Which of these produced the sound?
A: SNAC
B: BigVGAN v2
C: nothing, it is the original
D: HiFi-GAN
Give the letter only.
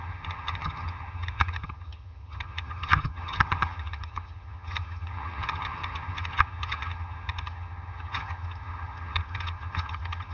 D